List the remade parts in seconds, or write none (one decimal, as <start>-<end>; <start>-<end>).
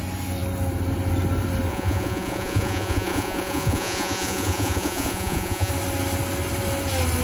1.7-5.7